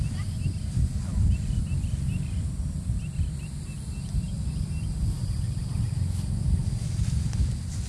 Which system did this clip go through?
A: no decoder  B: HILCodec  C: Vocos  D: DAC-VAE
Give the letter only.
A